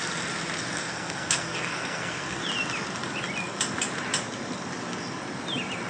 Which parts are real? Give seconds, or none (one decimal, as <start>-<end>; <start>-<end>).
0.0-0.8; 2.4-5.9